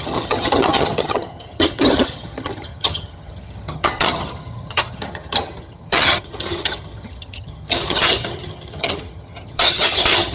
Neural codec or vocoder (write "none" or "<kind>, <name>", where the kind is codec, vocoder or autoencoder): vocoder, HiFi-GAN